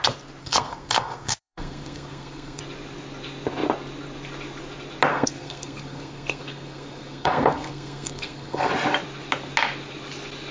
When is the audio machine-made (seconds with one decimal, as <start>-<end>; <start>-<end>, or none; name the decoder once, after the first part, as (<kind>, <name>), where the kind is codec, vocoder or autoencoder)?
0.4-2.6 (codec, SNAC); 5.1-8.7